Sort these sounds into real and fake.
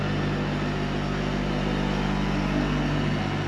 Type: real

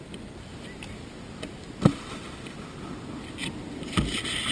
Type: real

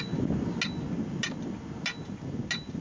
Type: real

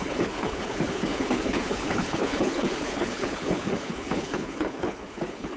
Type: fake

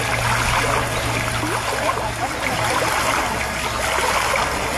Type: real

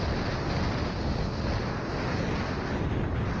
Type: real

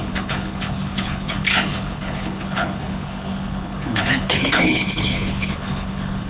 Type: fake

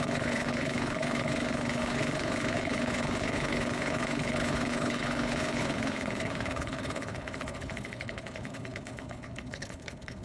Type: fake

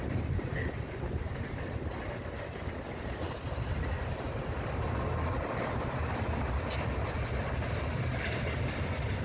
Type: real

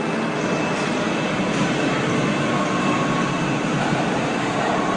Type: real